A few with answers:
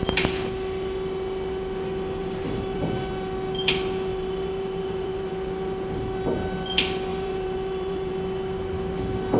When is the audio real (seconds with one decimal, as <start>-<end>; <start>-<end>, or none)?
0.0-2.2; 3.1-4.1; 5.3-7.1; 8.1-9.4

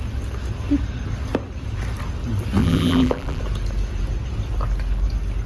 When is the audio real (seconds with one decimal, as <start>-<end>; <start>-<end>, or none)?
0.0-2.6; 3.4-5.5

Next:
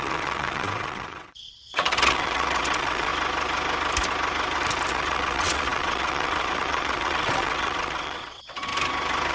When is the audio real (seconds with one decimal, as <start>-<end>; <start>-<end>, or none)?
3.1-4.9; 8.7-9.3